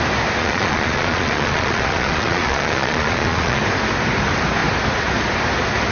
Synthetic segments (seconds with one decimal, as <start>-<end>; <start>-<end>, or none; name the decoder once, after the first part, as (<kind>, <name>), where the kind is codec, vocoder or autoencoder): 0.4-3.6 (vocoder, Vocos)